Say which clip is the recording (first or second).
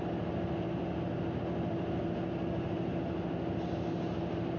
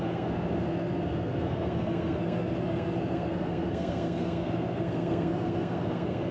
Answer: first